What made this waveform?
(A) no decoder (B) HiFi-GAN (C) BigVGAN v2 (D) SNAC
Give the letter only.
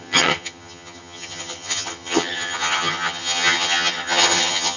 B